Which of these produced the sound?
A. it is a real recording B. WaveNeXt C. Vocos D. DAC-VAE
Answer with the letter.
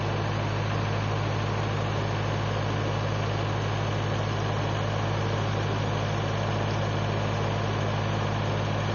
A